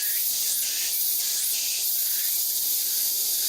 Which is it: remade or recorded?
recorded